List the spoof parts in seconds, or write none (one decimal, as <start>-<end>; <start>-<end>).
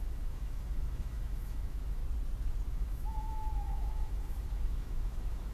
0.0-2.0; 2.7-5.5